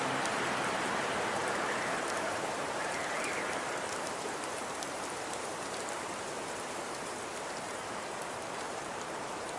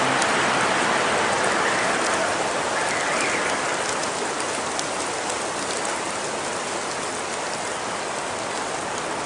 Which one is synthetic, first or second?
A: first